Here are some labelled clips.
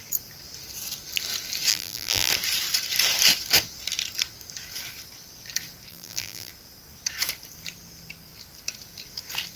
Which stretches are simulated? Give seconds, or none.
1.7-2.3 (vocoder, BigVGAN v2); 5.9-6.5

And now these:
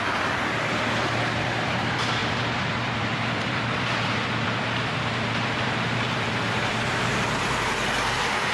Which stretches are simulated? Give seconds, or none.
0.0-8.5 (vocoder, BigVGAN v2)

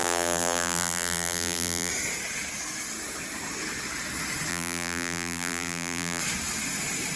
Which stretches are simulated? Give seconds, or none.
0.0-1.9 (vocoder, BigVGAN v2); 4.5-6.2

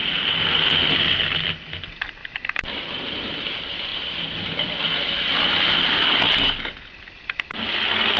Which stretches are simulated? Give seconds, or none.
2.2-3.2 (vocoder, BigVGAN v2); 3.9-6.1

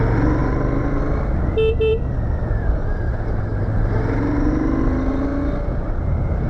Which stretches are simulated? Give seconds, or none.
0.4-1.0 (vocoder, BigVGAN v2); 1.9-4.5